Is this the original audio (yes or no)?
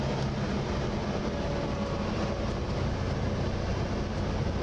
yes